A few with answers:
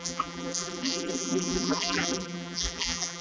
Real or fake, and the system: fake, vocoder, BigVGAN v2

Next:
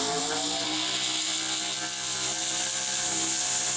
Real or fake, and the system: real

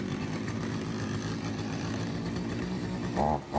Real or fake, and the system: real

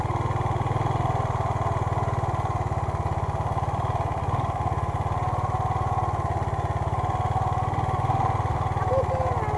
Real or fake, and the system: real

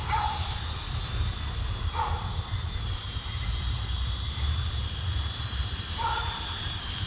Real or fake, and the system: fake, vocoder, BigVGAN v2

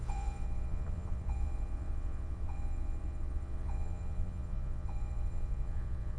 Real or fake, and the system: fake, vocoder, Vocos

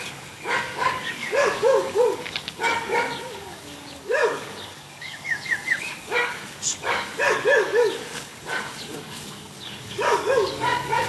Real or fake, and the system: fake, codec, DAC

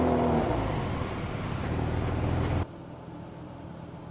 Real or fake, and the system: real